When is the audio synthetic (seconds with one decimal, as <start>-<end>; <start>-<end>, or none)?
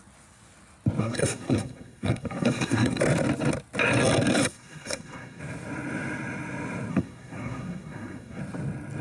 1.0-3.0; 4.4-5.4; 6.9-8.4